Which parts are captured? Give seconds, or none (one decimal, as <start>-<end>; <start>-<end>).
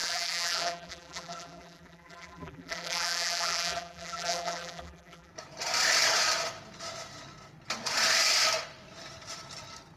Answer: 5.3-10.0